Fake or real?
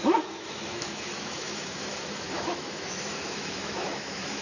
fake